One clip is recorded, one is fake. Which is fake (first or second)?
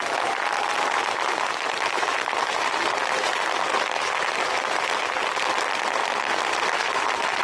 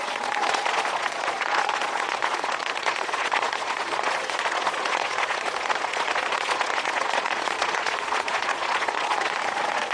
second